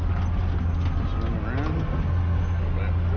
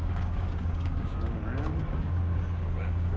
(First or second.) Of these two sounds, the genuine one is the first